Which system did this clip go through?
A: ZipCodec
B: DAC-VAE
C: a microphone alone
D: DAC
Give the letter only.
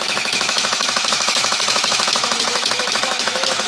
B